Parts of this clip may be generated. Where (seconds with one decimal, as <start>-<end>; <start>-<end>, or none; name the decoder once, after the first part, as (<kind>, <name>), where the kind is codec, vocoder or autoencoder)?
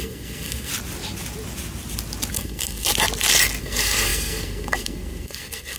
0.0-0.7 (codec, SNAC); 2.3-2.9; 3.6-5.8